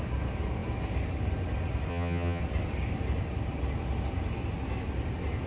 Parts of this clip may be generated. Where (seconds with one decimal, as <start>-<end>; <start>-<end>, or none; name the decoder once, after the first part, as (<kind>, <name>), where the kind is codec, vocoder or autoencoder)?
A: 1.9-2.4 (vocoder, HiFi-GAN)